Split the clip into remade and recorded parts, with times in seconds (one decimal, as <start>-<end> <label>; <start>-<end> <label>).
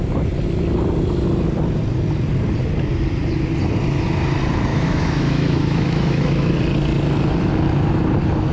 0.0-4.7 recorded; 4.7-6.5 remade; 6.5-8.5 recorded